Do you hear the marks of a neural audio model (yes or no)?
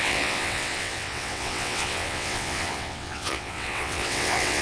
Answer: yes